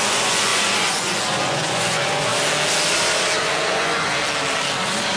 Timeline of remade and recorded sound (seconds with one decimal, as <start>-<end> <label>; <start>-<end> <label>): 0.0-2.3 remade; 2.3-3.4 recorded; 3.4-4.1 remade; 4.1-5.2 recorded

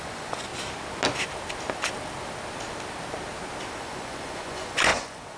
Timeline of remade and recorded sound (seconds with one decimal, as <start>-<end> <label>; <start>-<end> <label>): 0.0-0.5 remade; 0.5-3.7 recorded; 3.7-5.4 remade

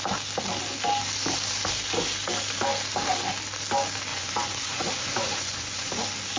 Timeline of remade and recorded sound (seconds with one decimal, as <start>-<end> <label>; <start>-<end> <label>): 0.0-4.1 recorded; 4.1-5.9 remade; 5.9-6.4 recorded

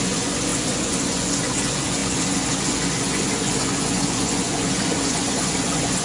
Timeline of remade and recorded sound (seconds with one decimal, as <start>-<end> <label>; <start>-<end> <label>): 0.0-6.0 remade